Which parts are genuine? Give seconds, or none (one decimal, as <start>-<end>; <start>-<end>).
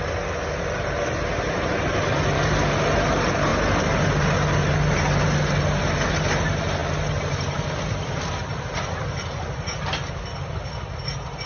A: 0.0-11.5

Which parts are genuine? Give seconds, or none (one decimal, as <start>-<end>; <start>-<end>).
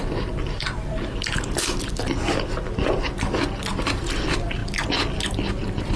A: 1.6-3.7; 4.6-5.5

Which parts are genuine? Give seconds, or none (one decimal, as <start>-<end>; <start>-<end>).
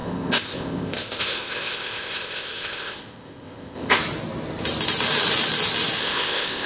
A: 4.0-6.0